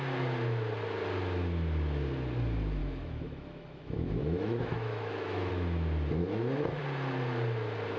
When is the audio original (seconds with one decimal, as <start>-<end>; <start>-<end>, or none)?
0.0-2.8; 5.5-6.2; 6.8-8.0